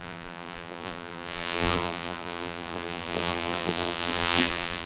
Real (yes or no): no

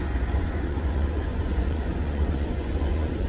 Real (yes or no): no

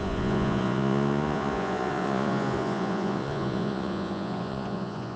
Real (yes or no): no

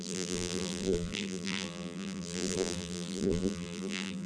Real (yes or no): no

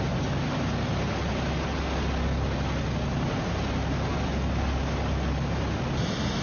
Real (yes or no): yes